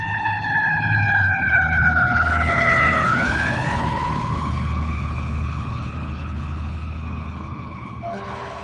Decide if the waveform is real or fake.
fake